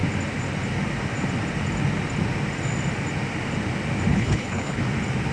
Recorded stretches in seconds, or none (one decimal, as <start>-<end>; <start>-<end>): 0.0-4.1; 4.8-5.3